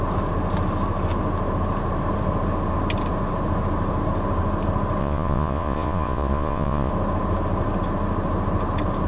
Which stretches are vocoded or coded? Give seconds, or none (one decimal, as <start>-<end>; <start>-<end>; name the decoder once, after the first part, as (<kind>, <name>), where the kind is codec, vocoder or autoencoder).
5.0-6.9 (vocoder, Vocos)